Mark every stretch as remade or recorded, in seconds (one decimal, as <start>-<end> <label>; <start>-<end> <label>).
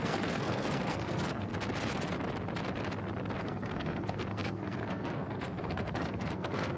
0.0-1.5 remade; 1.5-3.4 recorded; 3.4-6.8 remade